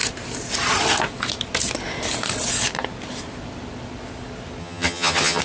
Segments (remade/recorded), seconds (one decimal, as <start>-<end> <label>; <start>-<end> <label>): 0.0-4.6 recorded; 4.6-5.4 remade